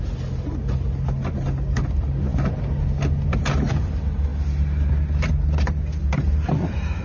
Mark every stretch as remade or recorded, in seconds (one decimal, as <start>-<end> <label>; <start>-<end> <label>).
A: 0.0-7.0 recorded